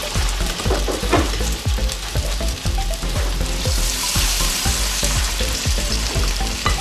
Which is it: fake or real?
fake